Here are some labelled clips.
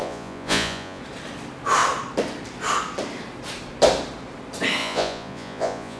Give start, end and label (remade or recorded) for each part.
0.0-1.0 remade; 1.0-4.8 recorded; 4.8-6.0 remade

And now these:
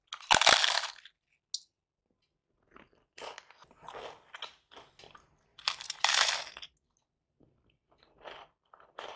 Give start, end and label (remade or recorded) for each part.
0.0-5.5 recorded; 5.5-6.3 remade; 6.3-9.2 recorded